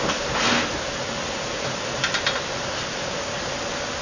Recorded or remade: recorded